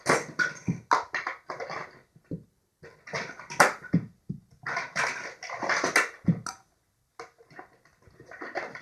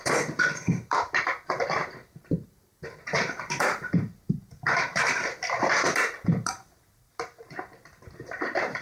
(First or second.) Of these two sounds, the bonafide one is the first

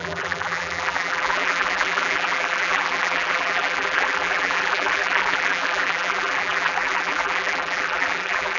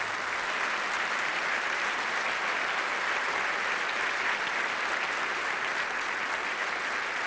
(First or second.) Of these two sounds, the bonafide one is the second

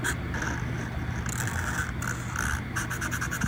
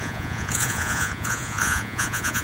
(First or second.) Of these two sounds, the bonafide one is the first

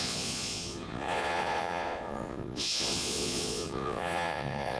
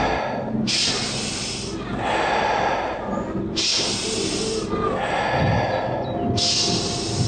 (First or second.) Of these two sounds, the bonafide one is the second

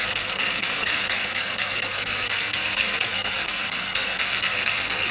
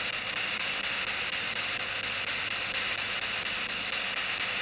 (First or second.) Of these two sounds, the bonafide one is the second